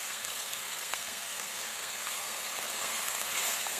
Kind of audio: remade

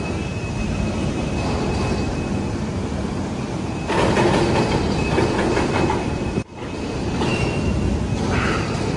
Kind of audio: recorded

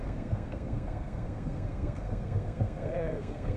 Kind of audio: remade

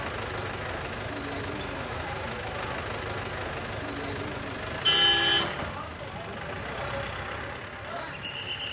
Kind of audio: recorded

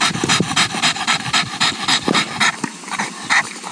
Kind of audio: recorded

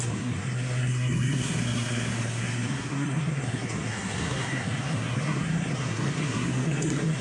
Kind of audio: remade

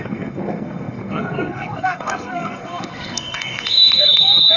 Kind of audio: remade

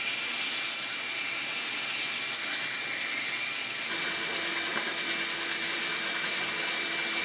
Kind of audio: recorded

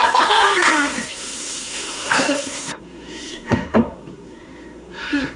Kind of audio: remade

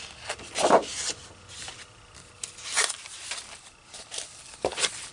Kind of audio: recorded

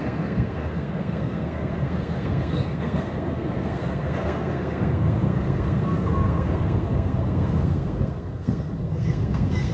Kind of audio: remade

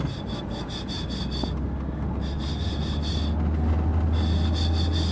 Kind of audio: recorded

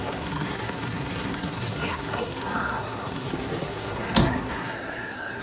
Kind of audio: remade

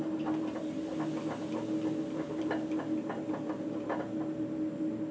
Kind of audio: recorded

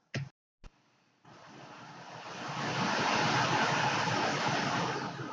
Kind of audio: recorded